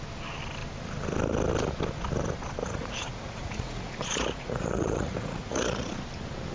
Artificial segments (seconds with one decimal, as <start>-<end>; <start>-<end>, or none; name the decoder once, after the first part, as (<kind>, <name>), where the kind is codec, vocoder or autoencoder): 2.6-5.9 (vocoder, Vocos)